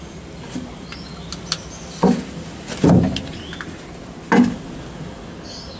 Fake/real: real